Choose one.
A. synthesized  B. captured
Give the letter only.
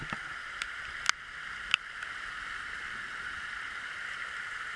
B